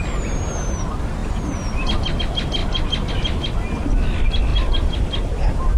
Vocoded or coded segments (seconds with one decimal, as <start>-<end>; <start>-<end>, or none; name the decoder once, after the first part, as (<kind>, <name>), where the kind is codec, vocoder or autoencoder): none